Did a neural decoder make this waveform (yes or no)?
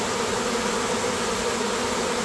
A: no